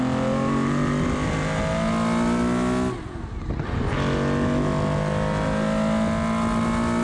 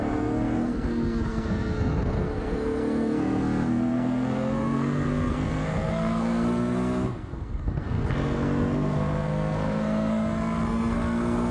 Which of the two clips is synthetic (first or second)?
second